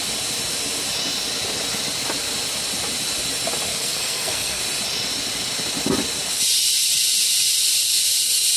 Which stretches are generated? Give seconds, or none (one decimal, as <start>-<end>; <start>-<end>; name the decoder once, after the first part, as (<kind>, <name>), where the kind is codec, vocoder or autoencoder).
3.7-4.6 (codec, SNAC)